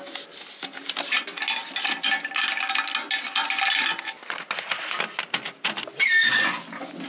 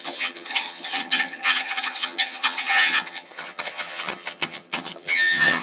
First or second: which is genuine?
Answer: first